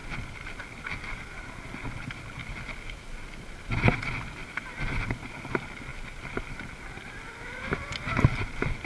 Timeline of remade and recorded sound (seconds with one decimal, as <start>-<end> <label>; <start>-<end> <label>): 0.0-8.9 recorded

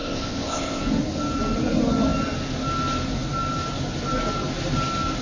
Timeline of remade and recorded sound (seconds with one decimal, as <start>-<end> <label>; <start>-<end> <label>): 0.0-0.8 remade; 0.8-5.2 recorded

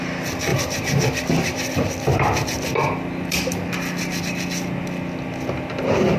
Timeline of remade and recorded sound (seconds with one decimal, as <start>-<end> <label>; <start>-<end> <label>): 0.0-0.5 recorded; 0.5-4.2 remade; 4.2-6.2 recorded

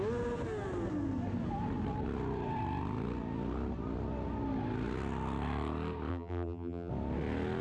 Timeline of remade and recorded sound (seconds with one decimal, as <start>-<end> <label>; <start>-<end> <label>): 0.0-6.1 recorded; 6.1-6.9 remade; 6.9-7.6 recorded